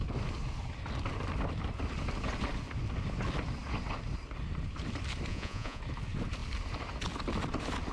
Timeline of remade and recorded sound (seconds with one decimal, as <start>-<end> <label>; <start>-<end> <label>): 0.0-5.3 recorded; 5.3-5.8 remade; 5.8-7.9 recorded